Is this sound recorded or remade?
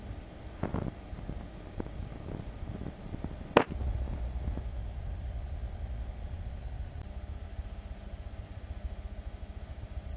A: recorded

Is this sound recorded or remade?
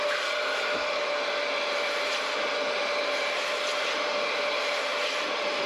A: recorded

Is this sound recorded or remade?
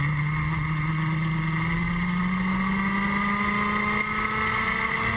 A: recorded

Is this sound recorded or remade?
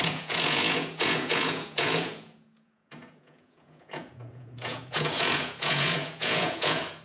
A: remade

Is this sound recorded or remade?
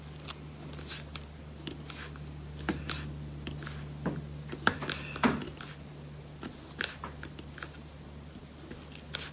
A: recorded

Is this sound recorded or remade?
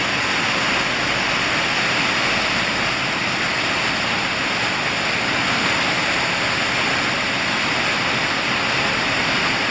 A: recorded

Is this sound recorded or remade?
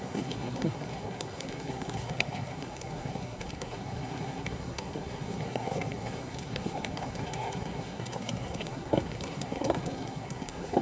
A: remade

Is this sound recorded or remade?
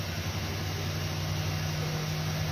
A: recorded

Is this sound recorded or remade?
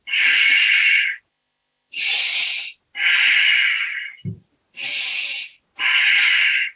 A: recorded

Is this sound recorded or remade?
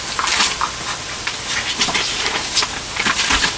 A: recorded